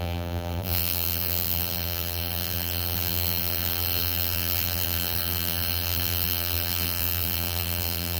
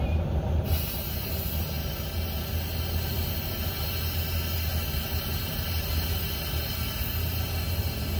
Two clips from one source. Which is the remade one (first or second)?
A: first